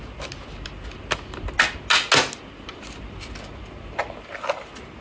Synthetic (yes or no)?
no